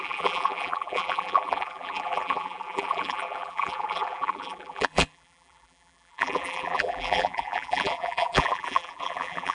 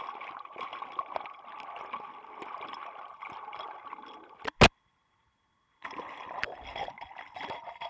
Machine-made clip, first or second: first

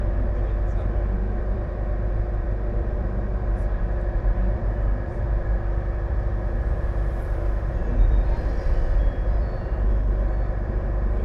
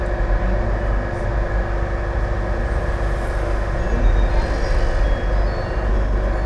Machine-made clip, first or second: first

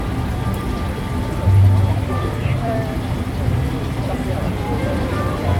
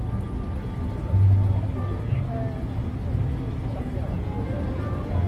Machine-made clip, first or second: first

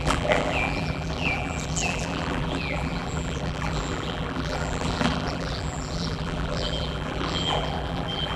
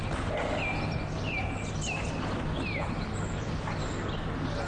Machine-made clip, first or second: first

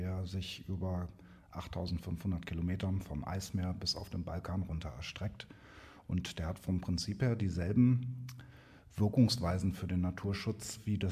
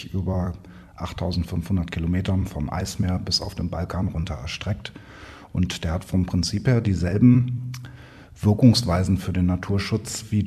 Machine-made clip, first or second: second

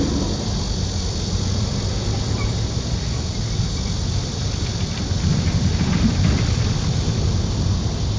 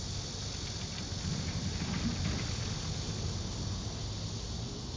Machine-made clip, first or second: first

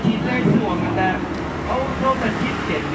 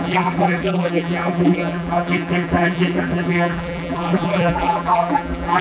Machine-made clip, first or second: second